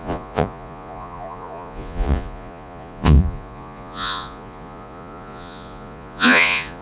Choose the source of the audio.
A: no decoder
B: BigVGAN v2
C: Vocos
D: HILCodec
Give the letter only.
C